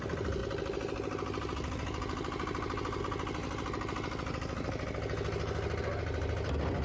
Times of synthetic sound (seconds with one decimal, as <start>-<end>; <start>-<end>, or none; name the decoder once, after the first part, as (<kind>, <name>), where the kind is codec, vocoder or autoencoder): none

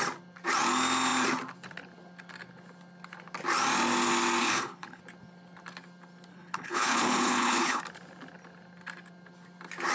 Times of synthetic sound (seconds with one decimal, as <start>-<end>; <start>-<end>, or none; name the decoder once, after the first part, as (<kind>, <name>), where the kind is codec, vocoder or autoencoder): 4.4-5.0 (codec, HILCodec); 6.3-7.8

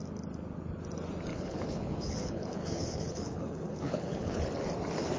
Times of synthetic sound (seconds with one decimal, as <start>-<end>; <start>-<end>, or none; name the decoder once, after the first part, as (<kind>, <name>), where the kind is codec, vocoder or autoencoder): 1.3-4.4 (codec, HILCodec)

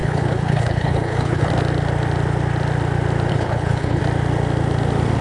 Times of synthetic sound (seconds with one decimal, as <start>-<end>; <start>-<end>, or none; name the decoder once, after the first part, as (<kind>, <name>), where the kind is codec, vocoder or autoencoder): 0.0-1.5 (codec, HILCodec); 3.3-4.0